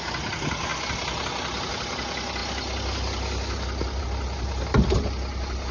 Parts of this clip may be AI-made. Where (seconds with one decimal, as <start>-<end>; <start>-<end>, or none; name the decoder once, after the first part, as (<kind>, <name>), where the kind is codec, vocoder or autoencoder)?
none